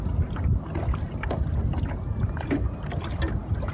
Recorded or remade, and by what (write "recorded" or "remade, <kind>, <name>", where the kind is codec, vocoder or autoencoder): recorded